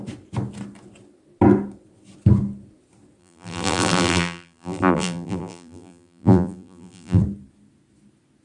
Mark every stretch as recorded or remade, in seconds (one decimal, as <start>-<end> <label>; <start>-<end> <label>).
0.0-3.2 recorded; 3.2-7.2 remade; 7.2-8.4 recorded

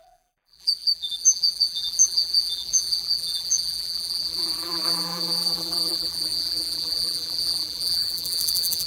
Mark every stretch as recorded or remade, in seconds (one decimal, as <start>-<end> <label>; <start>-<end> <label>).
0.0-8.9 remade